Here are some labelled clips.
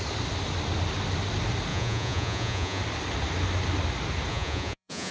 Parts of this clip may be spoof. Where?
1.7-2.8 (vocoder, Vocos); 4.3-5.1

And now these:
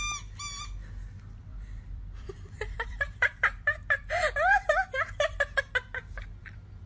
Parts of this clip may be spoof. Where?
1.5-5.6 (vocoder, BigVGAN v2)

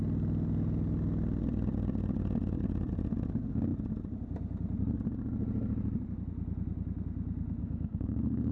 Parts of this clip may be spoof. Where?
7.6-8.5 (codec, SNAC)

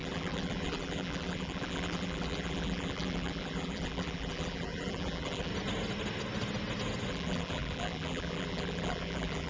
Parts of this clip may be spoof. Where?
0.0-5.5 (vocoder, BigVGAN v2); 7.1-9.5

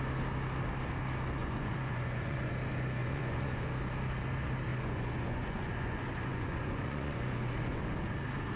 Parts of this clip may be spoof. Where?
1.4-2.5 (vocoder, Vocos); 3.0-3.6; 4.7-7.8

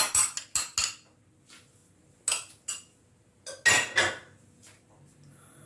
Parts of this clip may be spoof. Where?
none

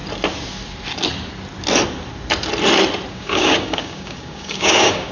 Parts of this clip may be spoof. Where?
3.1-5.1 (codec, DAC)